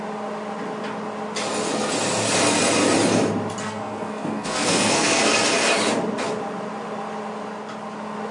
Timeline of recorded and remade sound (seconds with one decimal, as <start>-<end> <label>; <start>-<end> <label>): 0.0-3.6 recorded; 3.6-5.2 remade; 5.2-8.3 recorded